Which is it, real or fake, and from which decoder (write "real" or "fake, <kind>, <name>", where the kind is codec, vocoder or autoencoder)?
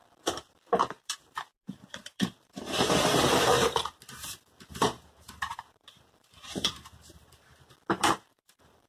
fake, vocoder, BigVGAN v2